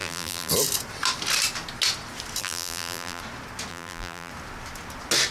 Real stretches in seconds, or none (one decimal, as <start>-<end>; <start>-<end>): 0.5-2.4; 3.2-3.7; 4.3-5.3